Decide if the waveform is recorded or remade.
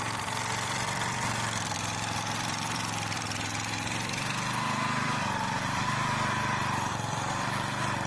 remade